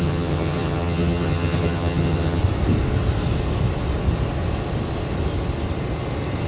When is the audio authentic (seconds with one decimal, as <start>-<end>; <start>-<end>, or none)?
2.4-6.5